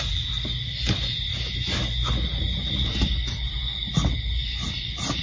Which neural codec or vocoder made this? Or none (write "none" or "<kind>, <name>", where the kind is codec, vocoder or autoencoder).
none